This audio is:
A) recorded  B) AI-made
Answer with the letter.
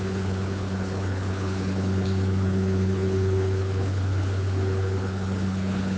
B